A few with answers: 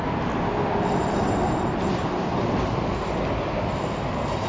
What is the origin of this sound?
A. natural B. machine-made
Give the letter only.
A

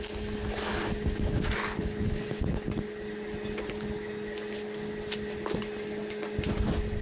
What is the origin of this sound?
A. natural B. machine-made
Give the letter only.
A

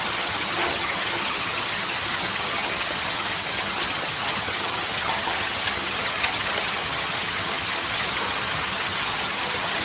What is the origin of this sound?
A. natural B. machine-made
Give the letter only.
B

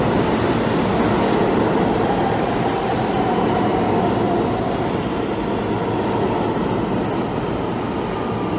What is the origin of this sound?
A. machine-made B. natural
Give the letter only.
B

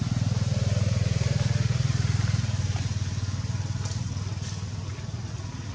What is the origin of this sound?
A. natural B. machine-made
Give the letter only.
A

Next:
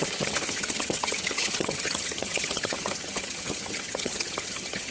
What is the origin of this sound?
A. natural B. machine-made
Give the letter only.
B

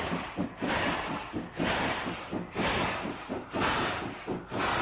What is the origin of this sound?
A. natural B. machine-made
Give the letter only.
A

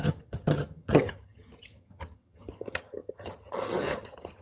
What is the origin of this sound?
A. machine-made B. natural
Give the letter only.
A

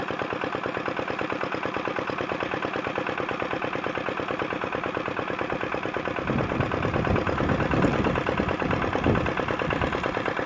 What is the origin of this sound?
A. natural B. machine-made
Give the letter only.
A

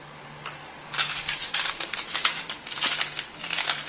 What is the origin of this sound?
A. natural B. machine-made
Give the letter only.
A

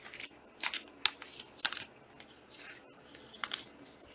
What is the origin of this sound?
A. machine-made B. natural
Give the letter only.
B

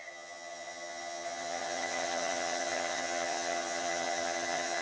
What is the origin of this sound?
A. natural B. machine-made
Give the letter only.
B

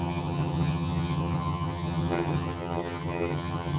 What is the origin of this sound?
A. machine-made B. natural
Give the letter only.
A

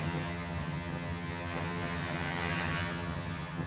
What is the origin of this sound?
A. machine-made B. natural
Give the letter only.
A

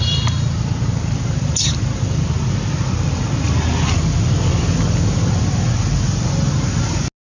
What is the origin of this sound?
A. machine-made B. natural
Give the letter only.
B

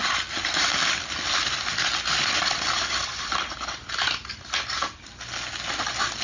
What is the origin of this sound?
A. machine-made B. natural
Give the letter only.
B